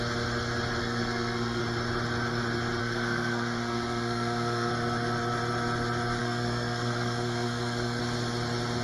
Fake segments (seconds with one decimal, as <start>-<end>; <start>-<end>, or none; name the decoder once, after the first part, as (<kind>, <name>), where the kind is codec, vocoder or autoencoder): 0.8-1.6 (codec, SNAC); 2.8-4.7; 6.2-8.0